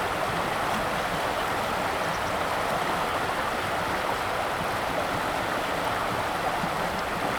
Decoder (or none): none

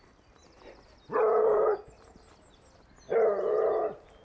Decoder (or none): none